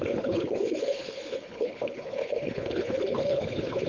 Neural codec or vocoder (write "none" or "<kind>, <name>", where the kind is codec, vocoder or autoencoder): codec, HILCodec